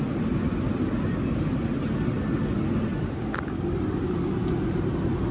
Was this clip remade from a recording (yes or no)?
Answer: no